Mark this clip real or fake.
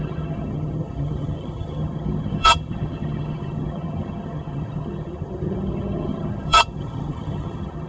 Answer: fake